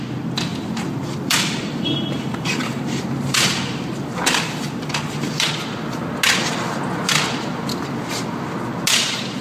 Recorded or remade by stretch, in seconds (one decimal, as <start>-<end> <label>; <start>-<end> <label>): 0.0-0.5 recorded; 0.5-5.5 remade; 5.5-9.4 recorded